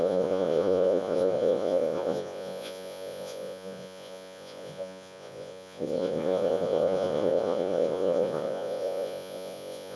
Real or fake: fake